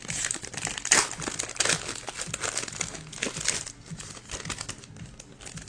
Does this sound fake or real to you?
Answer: real